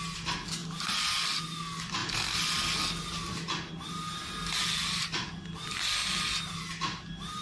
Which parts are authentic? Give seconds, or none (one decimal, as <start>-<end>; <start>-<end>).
0.0-7.4